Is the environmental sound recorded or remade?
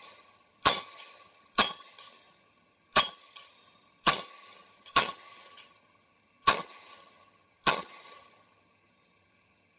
remade